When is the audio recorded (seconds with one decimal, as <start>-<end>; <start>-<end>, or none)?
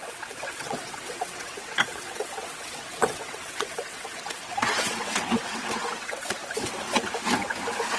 6.4-8.0